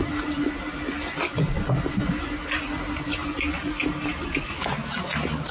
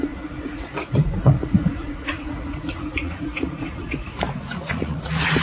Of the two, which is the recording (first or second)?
first